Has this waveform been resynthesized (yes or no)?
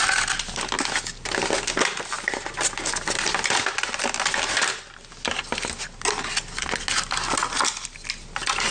no